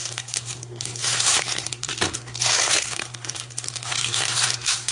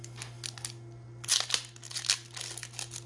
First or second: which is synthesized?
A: first